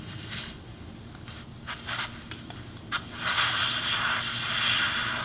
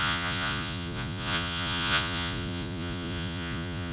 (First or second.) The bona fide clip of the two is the first